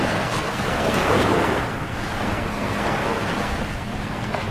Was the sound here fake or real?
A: fake